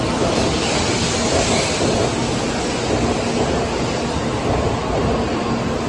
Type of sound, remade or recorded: recorded